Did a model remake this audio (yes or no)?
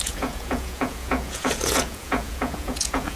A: yes